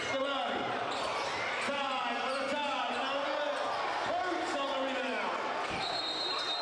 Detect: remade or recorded recorded